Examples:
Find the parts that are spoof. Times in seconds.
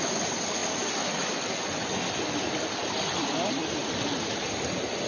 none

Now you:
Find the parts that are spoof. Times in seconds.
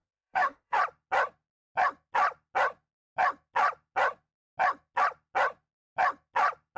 0.0-0.8 (autoencoder, DAC-VAE)